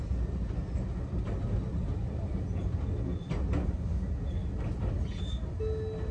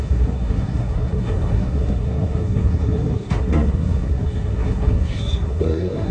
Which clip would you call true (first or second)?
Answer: first